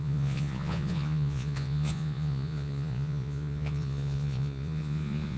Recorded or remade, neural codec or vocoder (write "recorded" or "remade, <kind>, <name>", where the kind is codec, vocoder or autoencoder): remade, vocoder, Vocos